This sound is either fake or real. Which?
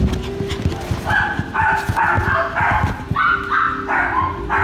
real